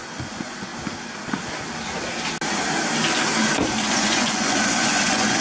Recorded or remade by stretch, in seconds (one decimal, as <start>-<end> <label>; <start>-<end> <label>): 0.0-0.7 remade; 0.7-3.9 recorded; 3.9-5.4 remade